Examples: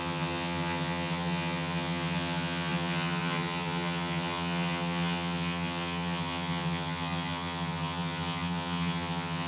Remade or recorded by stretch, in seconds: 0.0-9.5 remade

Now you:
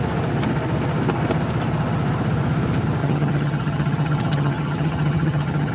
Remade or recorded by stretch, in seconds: 0.0-3.0 recorded; 3.0-5.7 remade